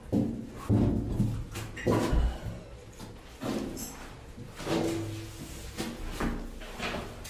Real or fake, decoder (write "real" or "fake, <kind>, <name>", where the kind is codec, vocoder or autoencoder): real